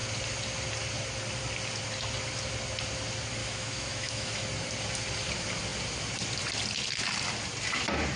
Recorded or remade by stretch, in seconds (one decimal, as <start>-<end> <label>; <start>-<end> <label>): 0.0-3.4 recorded; 3.4-4.4 remade; 4.4-8.2 recorded